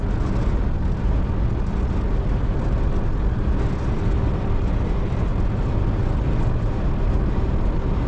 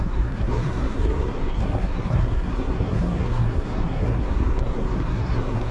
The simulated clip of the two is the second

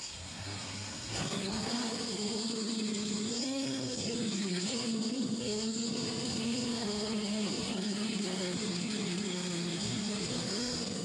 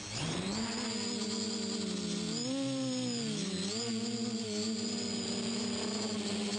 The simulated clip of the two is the first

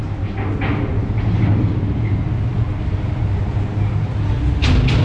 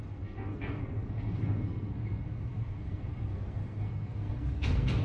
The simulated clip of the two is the second